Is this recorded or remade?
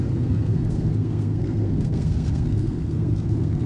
remade